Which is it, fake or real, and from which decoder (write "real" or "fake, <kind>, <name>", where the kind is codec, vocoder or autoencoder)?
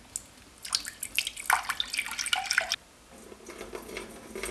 real